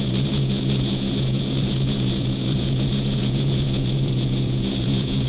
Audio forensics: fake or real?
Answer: fake